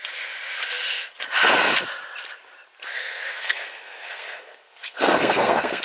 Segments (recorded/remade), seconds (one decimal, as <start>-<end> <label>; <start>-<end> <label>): 0.0-3.0 recorded; 3.0-5.8 remade